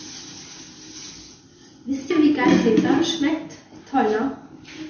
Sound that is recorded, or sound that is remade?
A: recorded